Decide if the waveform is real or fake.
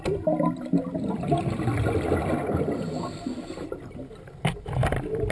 real